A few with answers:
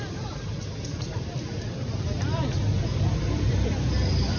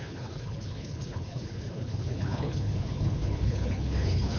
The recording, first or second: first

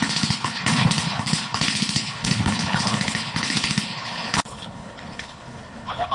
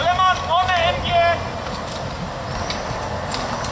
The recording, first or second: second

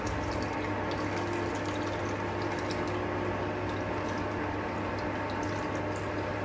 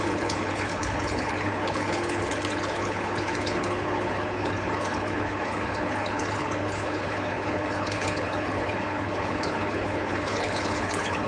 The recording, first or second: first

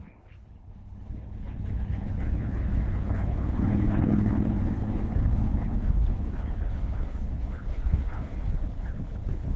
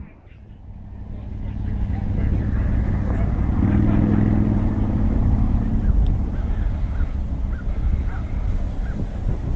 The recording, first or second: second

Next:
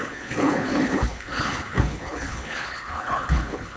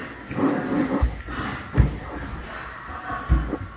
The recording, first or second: second